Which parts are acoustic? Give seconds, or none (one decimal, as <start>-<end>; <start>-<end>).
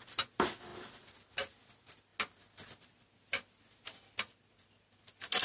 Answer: 0.0-5.4